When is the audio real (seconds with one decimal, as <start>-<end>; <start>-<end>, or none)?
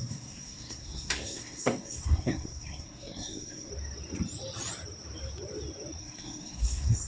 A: 3.7-6.0